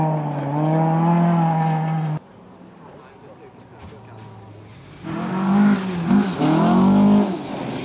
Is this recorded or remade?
recorded